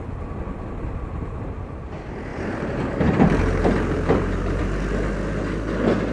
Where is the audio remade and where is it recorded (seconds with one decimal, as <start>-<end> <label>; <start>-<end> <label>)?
0.0-2.3 recorded; 2.3-4.6 remade; 4.6-6.1 recorded